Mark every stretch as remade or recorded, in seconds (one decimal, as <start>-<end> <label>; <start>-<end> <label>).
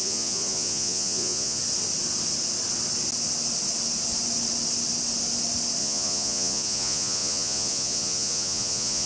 0.0-1.6 remade; 1.6-5.8 recorded; 5.8-9.1 remade